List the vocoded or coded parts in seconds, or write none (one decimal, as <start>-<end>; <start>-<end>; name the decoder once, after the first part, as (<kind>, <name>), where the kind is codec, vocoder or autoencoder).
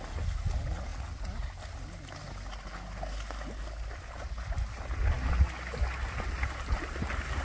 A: none